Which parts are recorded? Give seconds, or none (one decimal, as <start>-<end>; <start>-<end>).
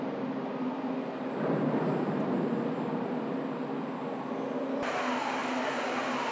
0.0-6.3